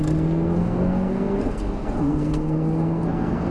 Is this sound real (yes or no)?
no